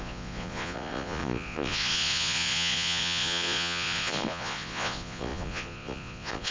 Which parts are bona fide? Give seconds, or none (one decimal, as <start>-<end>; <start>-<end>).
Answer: none

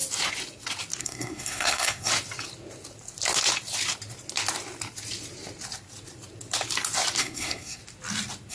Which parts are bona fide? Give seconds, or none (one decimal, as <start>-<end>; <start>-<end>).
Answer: 0.0-1.0; 2.1-7.2; 7.8-8.5

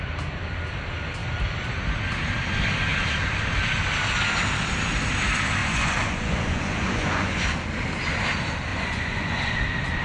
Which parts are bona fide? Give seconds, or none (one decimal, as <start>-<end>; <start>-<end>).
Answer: 0.0-5.6; 7.4-8.7; 9.5-10.0

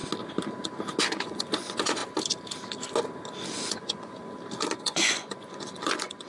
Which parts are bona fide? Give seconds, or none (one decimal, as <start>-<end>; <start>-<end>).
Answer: 0.0-1.0; 2.0-3.7; 4.2-4.8

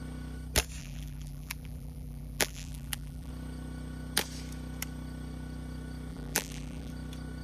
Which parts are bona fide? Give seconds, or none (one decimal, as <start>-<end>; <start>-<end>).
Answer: 0.0-0.8; 3.3-6.1; 6.9-7.4